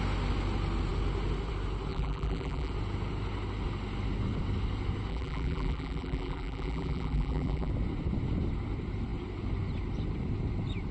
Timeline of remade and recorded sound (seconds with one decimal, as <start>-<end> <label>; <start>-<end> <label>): 0.0-1.9 recorded; 1.9-2.7 remade; 2.7-5.1 recorded; 5.1-7.7 remade; 7.7-10.9 recorded